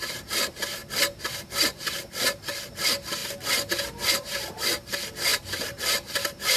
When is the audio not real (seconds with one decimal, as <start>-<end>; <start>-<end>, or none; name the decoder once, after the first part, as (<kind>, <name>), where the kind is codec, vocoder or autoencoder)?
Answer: 0.0-0.8 (vocoder, BigVGAN v2); 1.4-3.2; 3.7-6.6